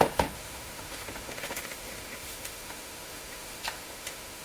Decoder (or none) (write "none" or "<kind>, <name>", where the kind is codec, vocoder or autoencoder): autoencoder, DAC-VAE